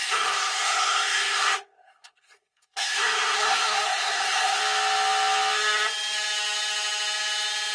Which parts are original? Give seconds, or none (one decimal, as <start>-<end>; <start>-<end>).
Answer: 4.6-7.7